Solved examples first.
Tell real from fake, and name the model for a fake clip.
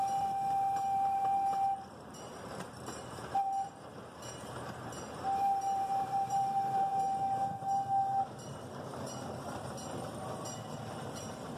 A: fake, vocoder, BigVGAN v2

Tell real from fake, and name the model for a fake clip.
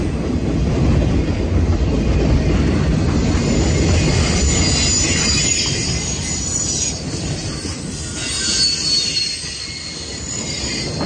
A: real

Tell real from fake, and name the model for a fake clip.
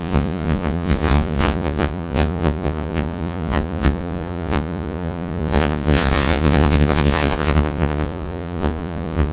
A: fake, vocoder, Vocos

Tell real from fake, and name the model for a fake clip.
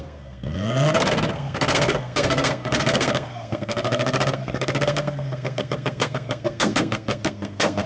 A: fake, codec, SNAC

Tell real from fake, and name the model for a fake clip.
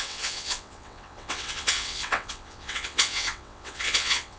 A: fake, vocoder, WaveNeXt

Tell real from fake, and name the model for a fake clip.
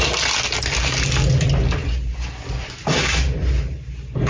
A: real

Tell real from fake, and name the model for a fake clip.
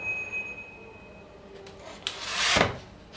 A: real